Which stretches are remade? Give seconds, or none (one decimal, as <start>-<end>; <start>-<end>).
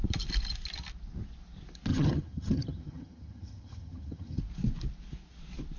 1.9-4.4